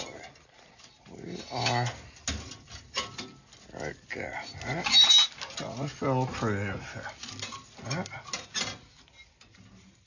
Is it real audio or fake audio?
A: real